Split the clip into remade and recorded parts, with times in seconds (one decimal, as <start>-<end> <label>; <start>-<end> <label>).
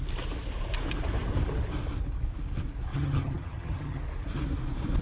0.0-2.9 recorded; 2.9-4.0 remade; 4.0-5.0 recorded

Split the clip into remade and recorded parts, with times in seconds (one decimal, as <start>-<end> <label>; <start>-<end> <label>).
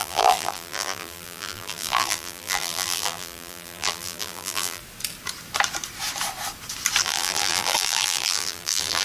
0.0-4.8 remade; 4.8-7.0 recorded; 7.0-9.0 remade